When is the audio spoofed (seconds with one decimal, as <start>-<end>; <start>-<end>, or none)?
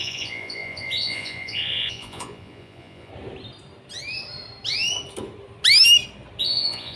0.0-3.1; 6.4-7.0